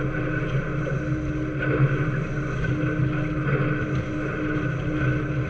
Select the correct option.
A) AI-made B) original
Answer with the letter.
B